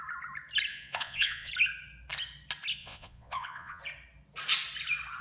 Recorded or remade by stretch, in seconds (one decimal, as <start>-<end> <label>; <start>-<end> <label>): 0.0-0.7 recorded; 0.7-1.5 remade; 1.5-2.8 recorded; 2.8-3.8 remade; 3.8-5.2 recorded